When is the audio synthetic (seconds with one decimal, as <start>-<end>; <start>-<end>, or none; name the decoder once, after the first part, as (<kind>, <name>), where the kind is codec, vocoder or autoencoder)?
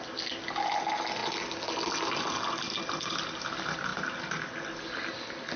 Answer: none